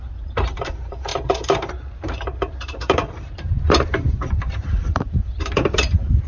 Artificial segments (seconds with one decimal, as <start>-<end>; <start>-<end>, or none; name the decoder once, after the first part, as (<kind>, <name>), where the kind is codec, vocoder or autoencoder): 0.0-6.3 (vocoder, BigVGAN v2)